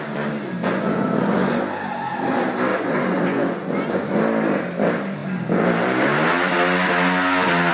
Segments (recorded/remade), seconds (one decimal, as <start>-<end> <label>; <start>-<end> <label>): 0.0-0.6 recorded; 0.6-1.6 remade; 1.6-2.7 recorded; 2.7-4.2 remade; 4.2-7.7 recorded